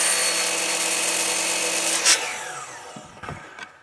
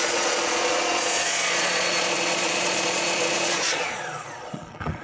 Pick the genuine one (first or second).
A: first